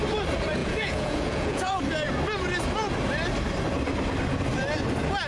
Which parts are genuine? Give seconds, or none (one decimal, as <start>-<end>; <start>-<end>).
0.0-0.6; 1.8-5.3